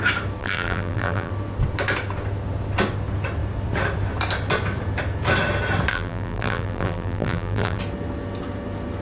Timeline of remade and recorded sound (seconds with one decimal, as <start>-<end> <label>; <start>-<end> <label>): 0.0-0.4 recorded; 0.4-1.3 remade; 1.3-5.9 recorded; 5.9-7.8 remade; 7.8-9.0 recorded